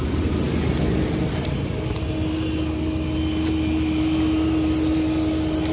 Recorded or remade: recorded